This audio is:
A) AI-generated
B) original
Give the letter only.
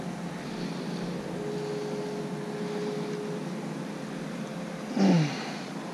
B